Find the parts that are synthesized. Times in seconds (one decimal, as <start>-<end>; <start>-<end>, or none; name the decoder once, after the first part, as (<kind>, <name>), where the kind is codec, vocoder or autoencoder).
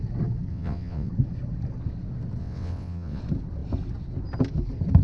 0.5-1.1 (vocoder, WaveNeXt); 2.4-3.2